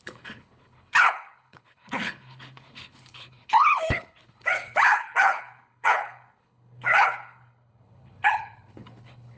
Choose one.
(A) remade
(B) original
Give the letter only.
A